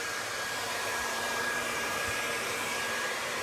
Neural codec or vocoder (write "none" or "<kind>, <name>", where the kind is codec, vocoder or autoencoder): vocoder, BigVGAN v2